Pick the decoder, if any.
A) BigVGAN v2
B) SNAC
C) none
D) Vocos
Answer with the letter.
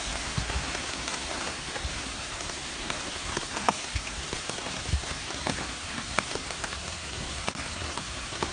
B